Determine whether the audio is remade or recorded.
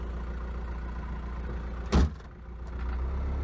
recorded